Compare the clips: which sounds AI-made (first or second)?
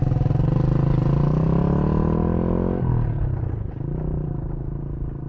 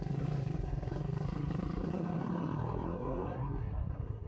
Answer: second